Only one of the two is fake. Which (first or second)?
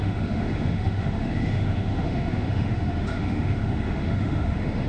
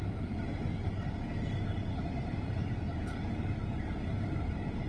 first